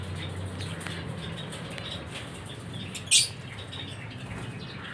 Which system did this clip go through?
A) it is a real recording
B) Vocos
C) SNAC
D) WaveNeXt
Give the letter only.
A